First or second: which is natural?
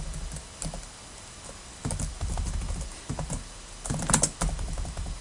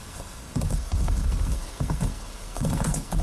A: first